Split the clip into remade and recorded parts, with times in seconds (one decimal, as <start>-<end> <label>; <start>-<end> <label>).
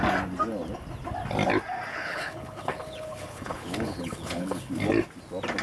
0.0-1.9 recorded; 1.9-4.7 remade; 4.7-5.6 recorded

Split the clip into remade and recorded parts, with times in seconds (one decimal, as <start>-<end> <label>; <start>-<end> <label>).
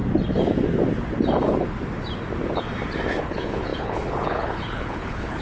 0.0-3.2 recorded; 3.2-5.4 remade